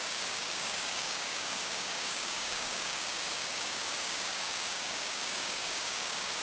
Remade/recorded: remade